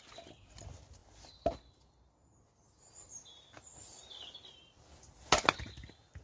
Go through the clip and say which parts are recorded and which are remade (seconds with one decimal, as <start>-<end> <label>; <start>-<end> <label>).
0.0-6.2 recorded